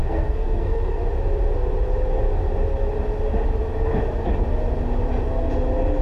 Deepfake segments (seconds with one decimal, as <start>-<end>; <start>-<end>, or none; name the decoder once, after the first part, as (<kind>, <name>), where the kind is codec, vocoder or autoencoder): 0.0-1.0 (codec, SNAC)